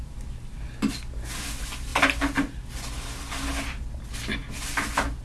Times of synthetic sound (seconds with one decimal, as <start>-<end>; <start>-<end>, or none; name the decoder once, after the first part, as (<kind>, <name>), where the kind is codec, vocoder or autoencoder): none